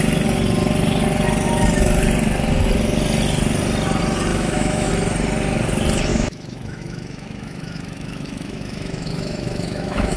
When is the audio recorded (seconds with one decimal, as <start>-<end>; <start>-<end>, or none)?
0.0-4.3; 4.9-6.1